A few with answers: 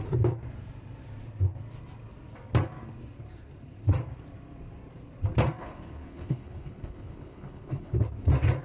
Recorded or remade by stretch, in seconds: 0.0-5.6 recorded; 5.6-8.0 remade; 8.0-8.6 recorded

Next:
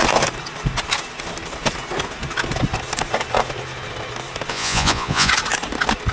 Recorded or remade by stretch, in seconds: 0.0-4.5 recorded; 4.5-5.3 remade; 5.3-6.1 recorded

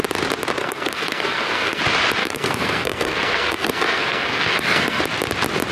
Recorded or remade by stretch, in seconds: 0.0-0.6 recorded; 0.6-1.8 remade; 1.8-2.2 recorded; 2.2-5.0 remade; 5.0-5.7 recorded

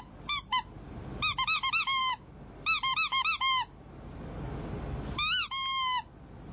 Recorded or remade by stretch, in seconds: 0.0-6.5 recorded